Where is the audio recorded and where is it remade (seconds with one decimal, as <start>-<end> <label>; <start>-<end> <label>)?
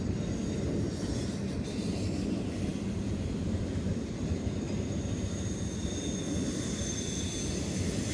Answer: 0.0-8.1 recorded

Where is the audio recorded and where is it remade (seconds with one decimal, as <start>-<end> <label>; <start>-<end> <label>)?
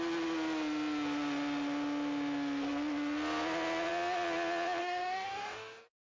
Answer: 0.0-4.8 recorded; 4.8-6.1 remade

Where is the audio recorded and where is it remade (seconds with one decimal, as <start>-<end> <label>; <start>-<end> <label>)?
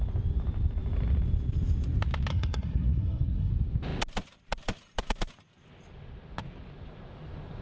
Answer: 0.0-2.3 recorded; 2.3-3.5 remade; 3.5-7.6 recorded